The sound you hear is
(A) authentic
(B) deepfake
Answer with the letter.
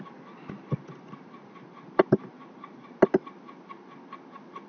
A